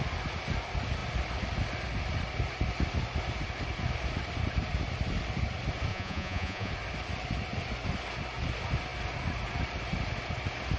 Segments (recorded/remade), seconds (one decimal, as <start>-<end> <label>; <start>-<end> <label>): 0.0-5.9 recorded; 5.9-6.7 remade; 6.7-10.8 recorded